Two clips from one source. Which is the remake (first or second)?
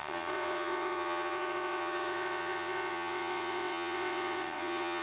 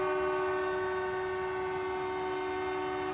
first